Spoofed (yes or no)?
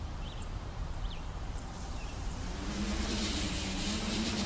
yes